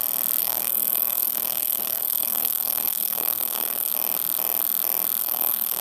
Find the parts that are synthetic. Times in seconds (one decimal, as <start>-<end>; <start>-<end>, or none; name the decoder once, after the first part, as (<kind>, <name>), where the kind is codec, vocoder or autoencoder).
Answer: 0.4-3.9 (codec, SNAC); 5.2-5.8